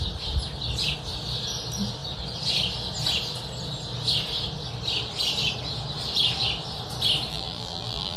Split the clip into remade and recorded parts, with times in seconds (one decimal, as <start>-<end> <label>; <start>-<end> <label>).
0.0-7.3 recorded; 7.3-8.2 remade